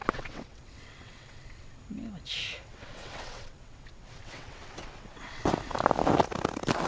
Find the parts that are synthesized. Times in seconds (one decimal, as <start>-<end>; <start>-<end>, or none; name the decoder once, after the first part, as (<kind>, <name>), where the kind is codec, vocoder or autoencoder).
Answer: 0.0-1.8 (vocoder, WaveNeXt); 2.7-5.5